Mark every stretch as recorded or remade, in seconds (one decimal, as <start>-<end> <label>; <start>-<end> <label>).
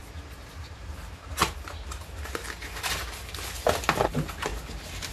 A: 0.0-0.5 recorded; 0.5-1.4 remade; 1.4-4.1 recorded; 4.1-5.1 remade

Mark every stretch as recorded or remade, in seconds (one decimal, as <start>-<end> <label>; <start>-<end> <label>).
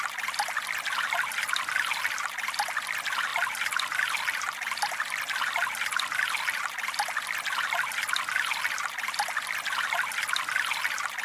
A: 0.0-11.2 recorded